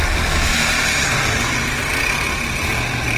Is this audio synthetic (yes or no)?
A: no